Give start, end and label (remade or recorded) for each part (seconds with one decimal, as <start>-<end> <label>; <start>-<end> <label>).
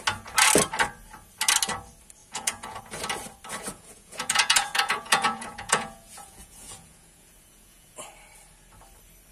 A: 0.0-2.2 recorded; 2.2-2.8 remade; 2.8-3.7 recorded; 3.7-8.0 remade; 8.0-9.3 recorded